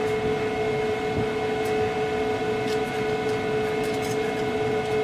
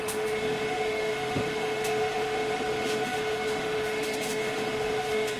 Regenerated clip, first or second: second